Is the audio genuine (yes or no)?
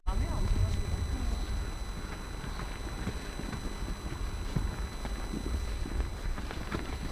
yes